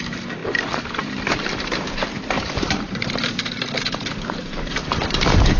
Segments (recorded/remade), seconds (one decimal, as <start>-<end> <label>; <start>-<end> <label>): 0.0-0.4 remade; 0.4-1.0 recorded; 1.0-5.6 remade